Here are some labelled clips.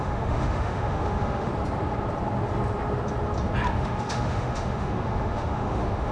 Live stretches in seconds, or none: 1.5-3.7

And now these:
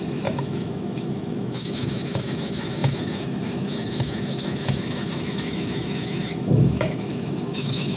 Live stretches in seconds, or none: none

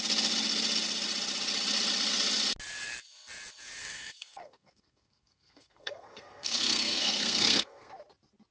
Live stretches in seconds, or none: 0.0-3.8; 7.9-8.5

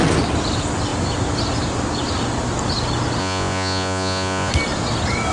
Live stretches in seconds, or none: 0.0-3.2; 4.5-5.3

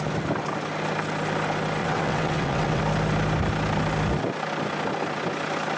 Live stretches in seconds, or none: 0.0-1.8; 2.8-5.8

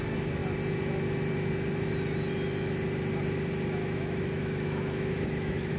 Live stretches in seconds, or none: 0.0-3.8

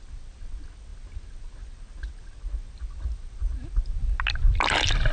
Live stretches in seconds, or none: 0.0-5.1

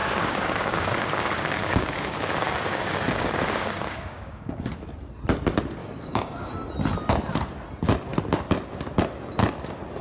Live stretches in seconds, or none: 4.6-5.8; 6.5-10.0